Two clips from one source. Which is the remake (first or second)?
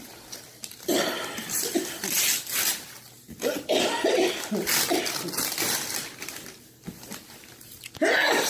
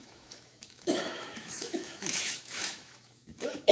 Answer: second